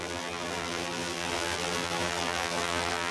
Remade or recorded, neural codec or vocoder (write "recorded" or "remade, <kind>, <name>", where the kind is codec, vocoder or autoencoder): remade, vocoder, BigVGAN v2